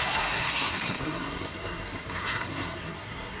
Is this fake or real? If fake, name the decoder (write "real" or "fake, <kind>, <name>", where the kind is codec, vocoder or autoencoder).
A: fake, codec, SNAC